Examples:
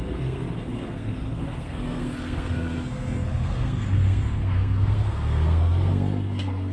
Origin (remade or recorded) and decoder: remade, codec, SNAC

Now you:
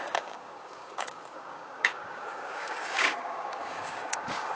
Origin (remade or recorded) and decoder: remade, codec, DAC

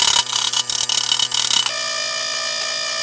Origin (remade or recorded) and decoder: recorded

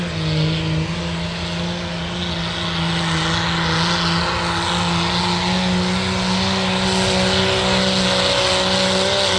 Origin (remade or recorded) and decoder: recorded